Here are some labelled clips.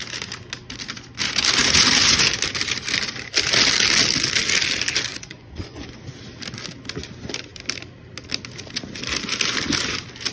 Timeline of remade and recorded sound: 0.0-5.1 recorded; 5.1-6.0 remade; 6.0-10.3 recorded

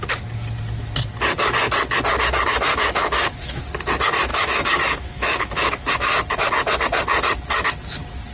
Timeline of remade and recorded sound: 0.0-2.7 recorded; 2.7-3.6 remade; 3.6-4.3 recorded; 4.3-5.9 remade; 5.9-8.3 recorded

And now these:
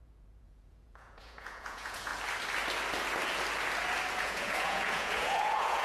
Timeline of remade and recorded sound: 0.0-2.1 remade; 2.1-4.2 recorded; 4.2-5.8 remade

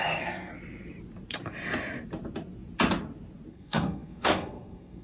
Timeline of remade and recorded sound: 0.0-0.5 remade; 0.5-3.5 recorded; 3.5-5.0 remade

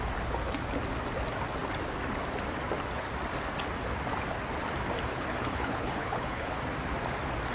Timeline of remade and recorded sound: 0.0-5.1 recorded; 5.1-6.5 remade; 6.5-7.5 recorded

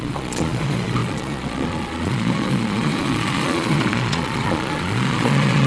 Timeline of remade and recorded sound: 0.0-5.7 remade

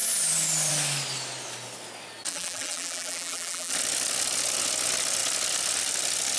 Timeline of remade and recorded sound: 0.0-2.3 recorded; 2.3-3.7 remade; 3.7-6.4 recorded